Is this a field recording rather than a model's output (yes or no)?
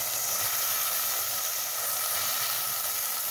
yes